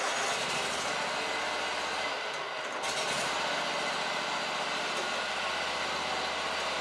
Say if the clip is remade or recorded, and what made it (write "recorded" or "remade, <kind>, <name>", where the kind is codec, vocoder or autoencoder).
recorded